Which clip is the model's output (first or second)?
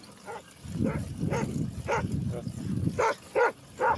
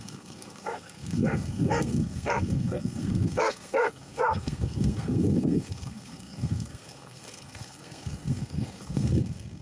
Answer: second